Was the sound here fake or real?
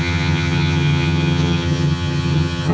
fake